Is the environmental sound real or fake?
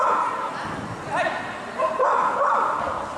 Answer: real